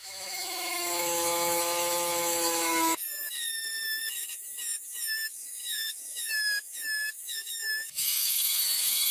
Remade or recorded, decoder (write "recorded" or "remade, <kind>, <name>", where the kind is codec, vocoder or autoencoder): remade, autoencoder, DAC-VAE